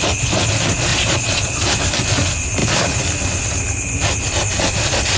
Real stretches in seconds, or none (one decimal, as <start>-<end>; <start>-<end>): 0.0-0.9; 1.6-5.2